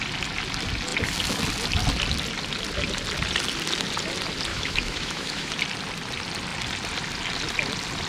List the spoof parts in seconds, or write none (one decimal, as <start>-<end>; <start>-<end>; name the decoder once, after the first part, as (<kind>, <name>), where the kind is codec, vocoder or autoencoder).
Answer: 4.5-5.5 (autoencoder, DAC-VAE)